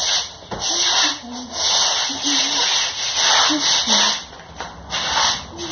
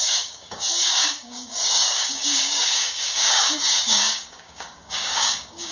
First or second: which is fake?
second